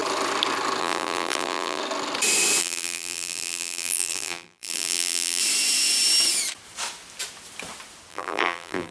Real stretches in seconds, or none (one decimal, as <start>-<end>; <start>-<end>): 0.0-0.8; 1.8-2.6; 5.4-8.1